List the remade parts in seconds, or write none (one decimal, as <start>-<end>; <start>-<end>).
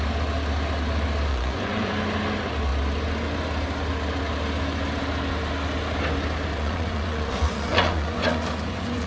1.3-1.9; 6.5-9.1